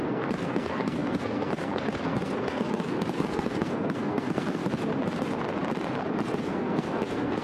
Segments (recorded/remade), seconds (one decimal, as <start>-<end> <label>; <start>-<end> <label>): 0.0-4.6 remade; 4.6-6.4 recorded; 6.4-7.4 remade